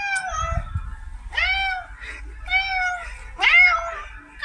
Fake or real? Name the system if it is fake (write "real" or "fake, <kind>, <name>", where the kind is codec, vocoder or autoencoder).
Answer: real